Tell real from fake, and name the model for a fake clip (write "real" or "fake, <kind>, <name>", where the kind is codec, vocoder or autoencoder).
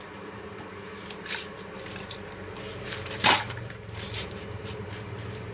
fake, vocoder, BigVGAN v2